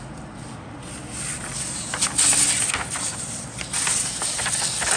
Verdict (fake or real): real